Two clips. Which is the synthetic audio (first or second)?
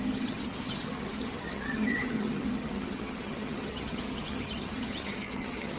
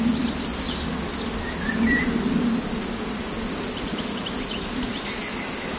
first